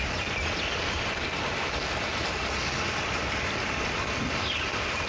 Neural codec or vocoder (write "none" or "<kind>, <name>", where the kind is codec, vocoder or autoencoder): none